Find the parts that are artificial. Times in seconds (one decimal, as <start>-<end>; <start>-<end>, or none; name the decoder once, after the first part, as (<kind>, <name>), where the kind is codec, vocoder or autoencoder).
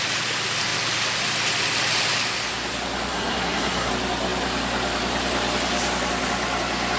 3.1-3.9 (codec, SNAC)